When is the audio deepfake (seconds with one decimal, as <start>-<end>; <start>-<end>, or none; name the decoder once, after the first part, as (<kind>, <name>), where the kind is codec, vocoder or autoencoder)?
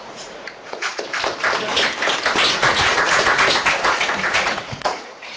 0.0-0.9 (vocoder, Vocos); 2.5-5.4